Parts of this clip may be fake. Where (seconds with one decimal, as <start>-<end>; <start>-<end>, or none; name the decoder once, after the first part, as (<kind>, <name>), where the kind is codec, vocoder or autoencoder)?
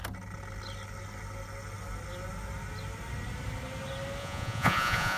4.2-5.2 (vocoder, Vocos)